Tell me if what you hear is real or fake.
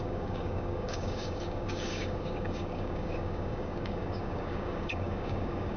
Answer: fake